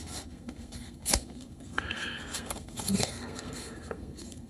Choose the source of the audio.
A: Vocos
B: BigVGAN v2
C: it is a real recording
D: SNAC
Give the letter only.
D